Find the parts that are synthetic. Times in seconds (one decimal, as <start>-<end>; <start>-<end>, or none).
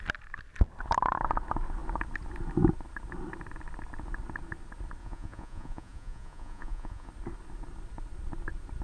5.0-7.1